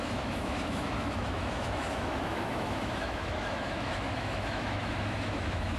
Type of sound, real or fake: fake